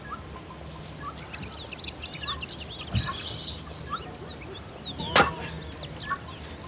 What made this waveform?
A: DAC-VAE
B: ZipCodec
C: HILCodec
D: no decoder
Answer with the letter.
D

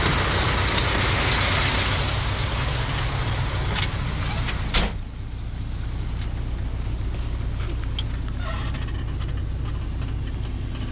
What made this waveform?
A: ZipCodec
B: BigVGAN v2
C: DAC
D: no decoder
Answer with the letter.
D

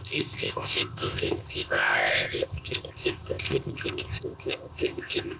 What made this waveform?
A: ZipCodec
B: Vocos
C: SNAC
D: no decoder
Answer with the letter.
A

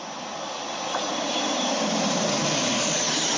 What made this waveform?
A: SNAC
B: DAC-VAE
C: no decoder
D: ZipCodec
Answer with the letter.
C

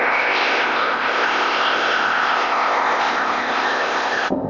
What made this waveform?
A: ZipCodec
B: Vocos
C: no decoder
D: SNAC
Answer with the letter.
A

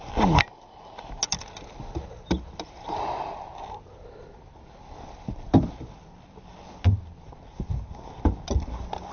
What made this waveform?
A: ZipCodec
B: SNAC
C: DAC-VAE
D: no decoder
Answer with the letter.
D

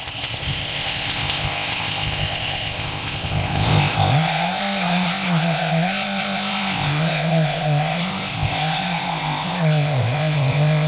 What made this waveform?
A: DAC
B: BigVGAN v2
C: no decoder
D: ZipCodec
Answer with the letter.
D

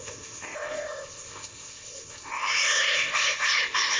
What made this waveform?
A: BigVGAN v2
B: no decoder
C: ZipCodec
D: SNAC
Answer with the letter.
C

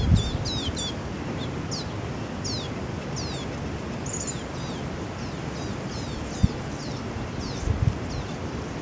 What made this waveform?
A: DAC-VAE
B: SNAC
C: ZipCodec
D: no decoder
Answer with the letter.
D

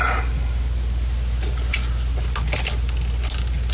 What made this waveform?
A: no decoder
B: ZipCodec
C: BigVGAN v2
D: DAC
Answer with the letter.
A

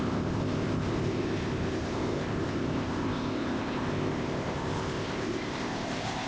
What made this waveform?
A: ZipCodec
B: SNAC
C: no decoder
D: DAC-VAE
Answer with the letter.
A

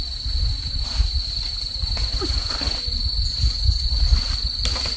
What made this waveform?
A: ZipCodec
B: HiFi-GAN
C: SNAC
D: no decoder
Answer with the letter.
D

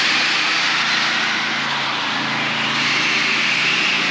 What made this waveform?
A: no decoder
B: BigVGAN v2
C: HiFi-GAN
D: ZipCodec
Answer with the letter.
A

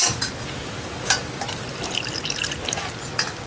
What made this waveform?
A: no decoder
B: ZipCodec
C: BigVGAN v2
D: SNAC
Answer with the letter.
A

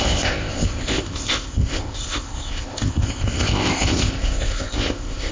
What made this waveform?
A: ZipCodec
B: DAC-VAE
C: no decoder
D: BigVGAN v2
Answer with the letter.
A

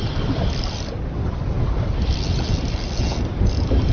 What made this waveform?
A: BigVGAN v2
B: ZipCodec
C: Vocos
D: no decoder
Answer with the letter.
D